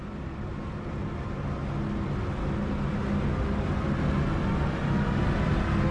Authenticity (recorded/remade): recorded